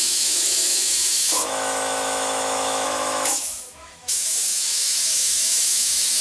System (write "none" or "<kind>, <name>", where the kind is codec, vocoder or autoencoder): autoencoder, DAC-VAE